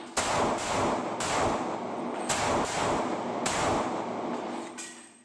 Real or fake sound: real